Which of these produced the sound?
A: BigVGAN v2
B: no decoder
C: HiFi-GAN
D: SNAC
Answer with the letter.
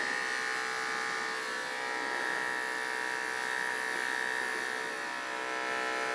B